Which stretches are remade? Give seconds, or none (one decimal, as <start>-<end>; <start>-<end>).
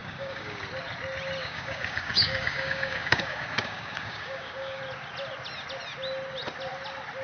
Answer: 0.0-0.6; 1.4-4.8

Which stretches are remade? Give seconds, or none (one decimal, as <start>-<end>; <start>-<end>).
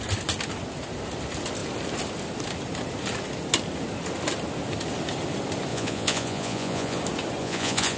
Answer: 5.7-7.0; 7.4-8.0